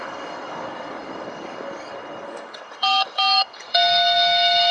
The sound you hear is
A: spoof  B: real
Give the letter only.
A